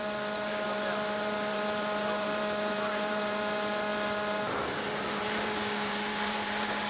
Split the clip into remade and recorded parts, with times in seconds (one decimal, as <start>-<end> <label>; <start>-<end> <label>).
0.0-6.9 remade